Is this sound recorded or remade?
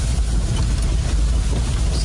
recorded